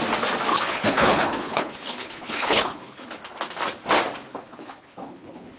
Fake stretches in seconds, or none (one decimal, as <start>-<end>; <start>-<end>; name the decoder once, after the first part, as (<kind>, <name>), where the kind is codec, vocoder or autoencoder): 0.5-3.1 (codec, HILCodec); 4.3-5.6